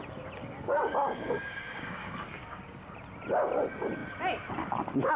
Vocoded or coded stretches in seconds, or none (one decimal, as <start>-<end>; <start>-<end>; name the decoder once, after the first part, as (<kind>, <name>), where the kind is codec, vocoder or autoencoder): 0.4-2.9 (codec, DAC)